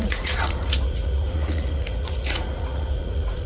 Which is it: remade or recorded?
remade